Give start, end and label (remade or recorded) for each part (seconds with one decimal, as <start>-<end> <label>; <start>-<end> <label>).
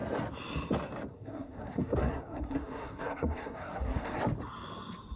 0.0-1.1 recorded; 1.1-4.2 remade; 4.2-5.2 recorded